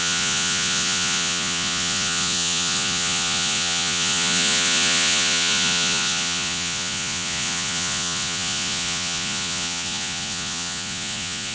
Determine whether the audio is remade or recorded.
remade